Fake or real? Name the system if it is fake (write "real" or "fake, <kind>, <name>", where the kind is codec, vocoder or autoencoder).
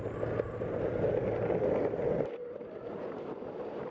real